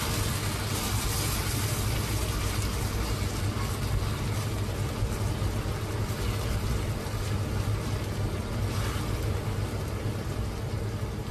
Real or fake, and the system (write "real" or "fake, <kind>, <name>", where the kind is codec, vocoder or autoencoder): real